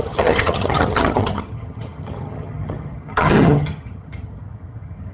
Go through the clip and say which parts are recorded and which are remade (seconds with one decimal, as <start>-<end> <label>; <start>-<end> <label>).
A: 0.0-5.1 remade